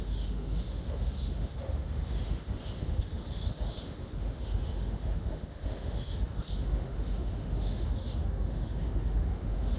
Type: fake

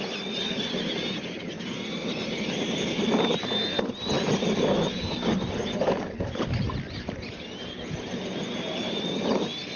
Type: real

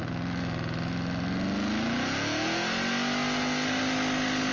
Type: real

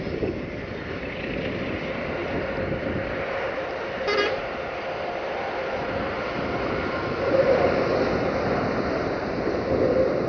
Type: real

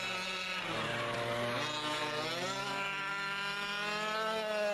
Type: real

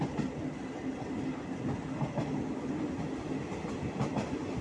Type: real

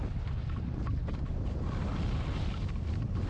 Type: fake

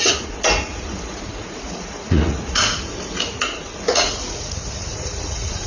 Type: fake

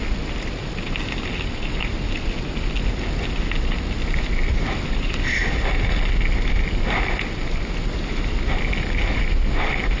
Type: real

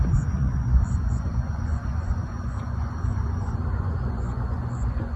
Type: fake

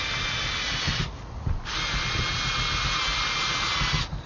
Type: real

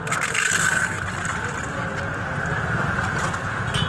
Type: real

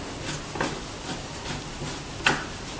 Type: real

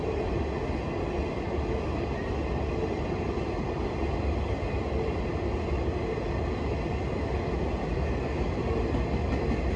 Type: real